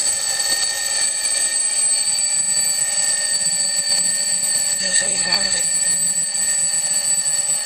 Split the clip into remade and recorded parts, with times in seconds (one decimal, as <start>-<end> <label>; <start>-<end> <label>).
0.0-4.8 recorded; 4.8-5.6 remade; 5.6-7.7 recorded

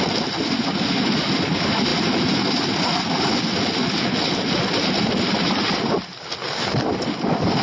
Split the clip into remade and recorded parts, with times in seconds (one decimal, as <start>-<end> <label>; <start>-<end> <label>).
0.0-0.7 recorded; 0.7-1.3 remade; 1.3-7.6 recorded

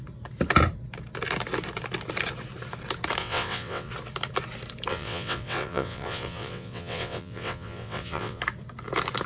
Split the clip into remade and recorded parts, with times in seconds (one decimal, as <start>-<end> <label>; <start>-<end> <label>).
0.0-3.2 recorded; 3.2-3.9 remade; 3.9-4.9 recorded; 4.9-8.4 remade; 8.4-9.3 recorded

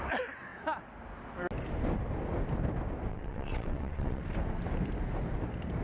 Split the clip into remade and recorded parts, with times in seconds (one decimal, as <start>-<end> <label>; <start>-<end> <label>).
0.0-3.1 recorded; 3.1-4.2 remade; 4.2-5.8 recorded

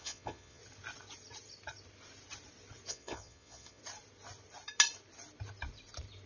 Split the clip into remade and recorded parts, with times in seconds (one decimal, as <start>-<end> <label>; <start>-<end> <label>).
0.0-0.6 remade; 0.6-2.9 recorded; 2.9-3.8 remade; 3.8-6.3 recorded

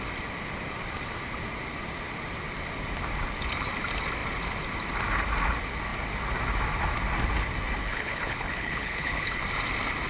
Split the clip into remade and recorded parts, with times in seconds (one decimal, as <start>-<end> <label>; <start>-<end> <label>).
0.0-7.8 recorded; 7.8-9.4 remade; 9.4-10.1 recorded